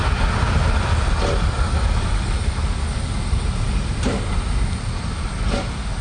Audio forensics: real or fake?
real